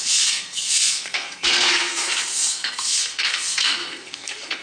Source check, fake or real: fake